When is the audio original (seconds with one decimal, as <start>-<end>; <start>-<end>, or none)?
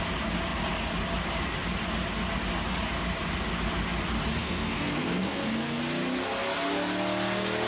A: 0.0-4.4; 5.8-7.7